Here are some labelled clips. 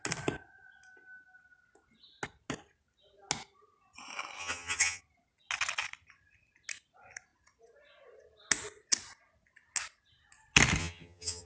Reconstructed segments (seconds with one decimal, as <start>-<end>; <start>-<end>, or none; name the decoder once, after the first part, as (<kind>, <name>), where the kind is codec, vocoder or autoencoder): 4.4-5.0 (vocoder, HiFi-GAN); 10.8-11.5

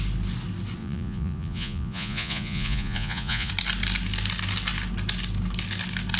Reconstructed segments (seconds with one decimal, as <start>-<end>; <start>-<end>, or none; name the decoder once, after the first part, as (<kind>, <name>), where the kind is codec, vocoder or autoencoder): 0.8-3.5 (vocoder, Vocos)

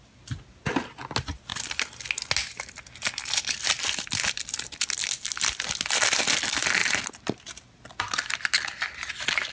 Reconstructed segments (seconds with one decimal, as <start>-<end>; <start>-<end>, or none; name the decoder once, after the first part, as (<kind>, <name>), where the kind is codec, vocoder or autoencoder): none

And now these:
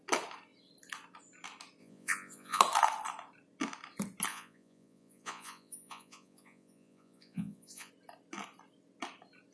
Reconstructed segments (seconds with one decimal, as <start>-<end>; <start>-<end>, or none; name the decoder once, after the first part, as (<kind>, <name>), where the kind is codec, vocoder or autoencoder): 1.8-2.6 (vocoder, Vocos); 4.3-7.9